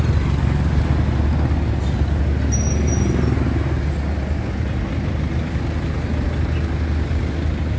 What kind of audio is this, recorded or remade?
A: recorded